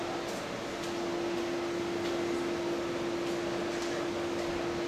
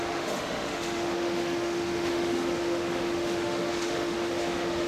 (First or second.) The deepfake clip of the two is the second